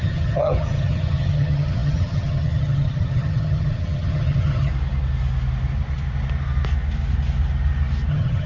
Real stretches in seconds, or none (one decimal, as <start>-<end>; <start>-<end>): 4.7-8.1